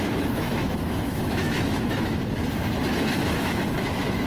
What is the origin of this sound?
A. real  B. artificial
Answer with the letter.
B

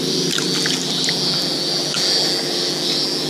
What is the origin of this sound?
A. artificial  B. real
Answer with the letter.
B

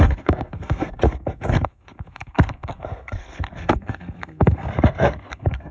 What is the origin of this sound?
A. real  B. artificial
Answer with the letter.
B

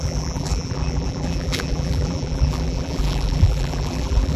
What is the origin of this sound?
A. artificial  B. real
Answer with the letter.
A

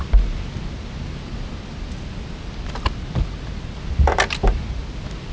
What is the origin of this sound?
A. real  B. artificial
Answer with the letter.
A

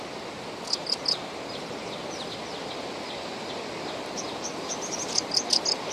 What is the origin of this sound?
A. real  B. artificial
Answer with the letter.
A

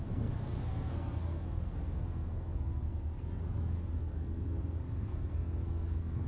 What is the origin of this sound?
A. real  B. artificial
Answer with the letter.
B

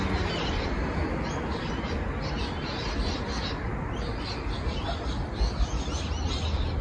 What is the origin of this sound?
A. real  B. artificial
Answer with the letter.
A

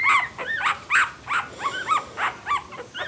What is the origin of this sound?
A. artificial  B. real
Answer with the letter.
B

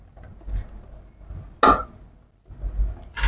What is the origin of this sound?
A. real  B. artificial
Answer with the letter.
A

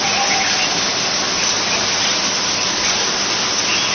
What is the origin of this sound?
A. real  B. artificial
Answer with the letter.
A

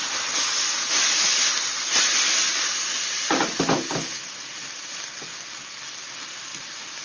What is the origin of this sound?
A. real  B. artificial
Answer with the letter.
A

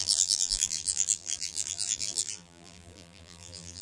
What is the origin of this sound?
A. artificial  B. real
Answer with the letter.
A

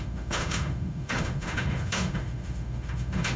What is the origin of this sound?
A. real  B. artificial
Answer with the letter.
B